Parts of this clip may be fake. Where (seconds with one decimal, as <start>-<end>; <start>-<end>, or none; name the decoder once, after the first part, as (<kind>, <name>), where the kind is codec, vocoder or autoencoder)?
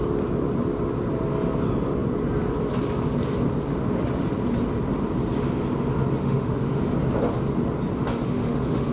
6.2-6.8 (autoencoder, DAC-VAE); 8.1-8.9